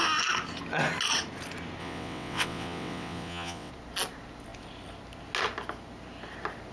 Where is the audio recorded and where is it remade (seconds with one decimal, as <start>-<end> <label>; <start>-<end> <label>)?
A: 0.0-1.8 recorded; 1.8-3.7 remade; 3.7-6.7 recorded